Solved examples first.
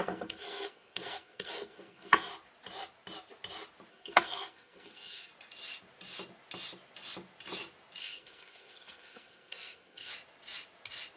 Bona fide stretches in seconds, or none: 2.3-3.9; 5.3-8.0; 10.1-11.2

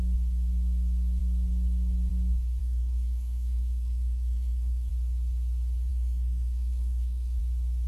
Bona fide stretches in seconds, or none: 0.0-2.6; 4.9-5.9; 7.4-7.9

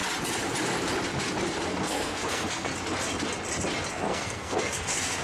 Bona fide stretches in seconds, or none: 0.0-1.8; 2.7-3.9